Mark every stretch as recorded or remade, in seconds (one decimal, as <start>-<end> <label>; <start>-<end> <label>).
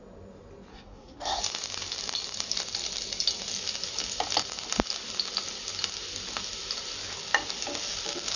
0.0-0.7 recorded; 0.7-1.4 remade; 1.4-8.4 recorded